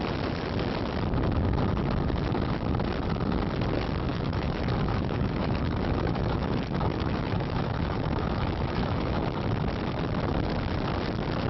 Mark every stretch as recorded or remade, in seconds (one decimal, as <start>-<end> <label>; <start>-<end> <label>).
0.0-4.1 recorded; 4.1-9.2 remade; 9.2-11.5 recorded